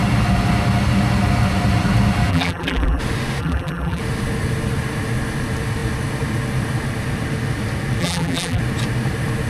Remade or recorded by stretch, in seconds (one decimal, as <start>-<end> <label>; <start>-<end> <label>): 0.0-2.3 recorded; 2.3-3.0 remade; 3.0-3.4 recorded; 3.4-4.0 remade; 4.0-8.0 recorded; 8.0-8.6 remade; 8.6-9.5 recorded